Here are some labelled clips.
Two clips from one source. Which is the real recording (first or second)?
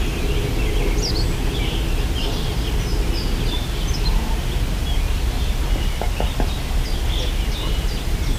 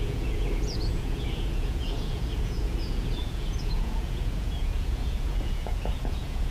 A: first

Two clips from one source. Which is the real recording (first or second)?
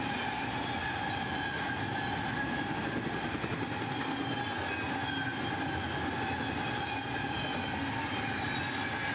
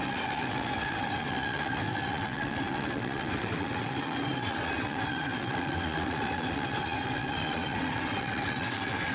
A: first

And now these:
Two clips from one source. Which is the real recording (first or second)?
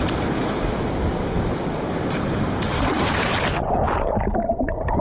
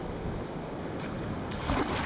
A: second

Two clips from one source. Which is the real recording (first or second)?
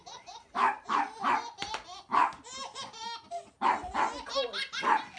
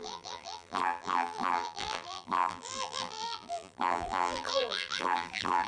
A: first